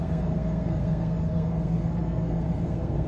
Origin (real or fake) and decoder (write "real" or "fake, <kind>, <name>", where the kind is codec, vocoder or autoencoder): fake, codec, SNAC